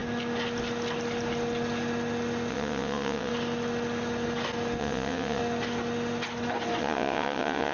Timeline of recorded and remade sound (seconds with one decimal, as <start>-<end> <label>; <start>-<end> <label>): 0.0-2.5 recorded; 2.5-3.3 remade; 3.3-4.8 recorded; 4.8-5.4 remade; 5.4-6.8 recorded; 6.8-7.7 remade